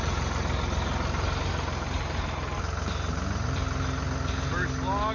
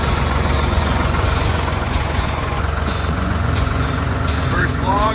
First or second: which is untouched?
first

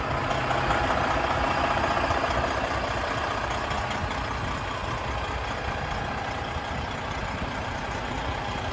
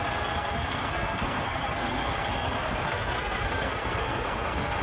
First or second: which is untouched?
first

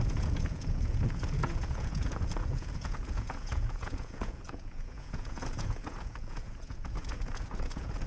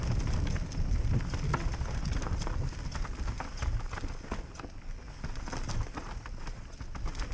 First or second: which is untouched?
second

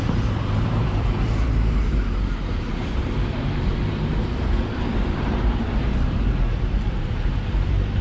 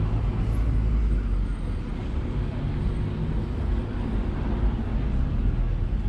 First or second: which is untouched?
second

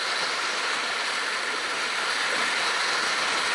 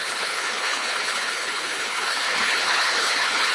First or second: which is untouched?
first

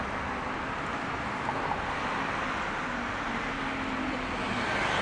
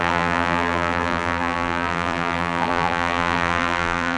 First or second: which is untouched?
first